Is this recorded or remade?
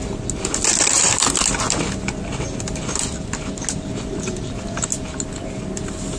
recorded